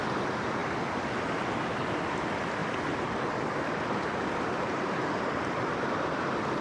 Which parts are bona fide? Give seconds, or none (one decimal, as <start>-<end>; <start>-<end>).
0.0-2.6